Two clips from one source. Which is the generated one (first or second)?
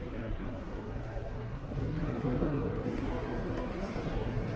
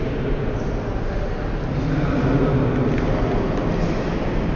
first